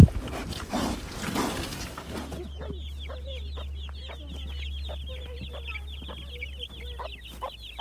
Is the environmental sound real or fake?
real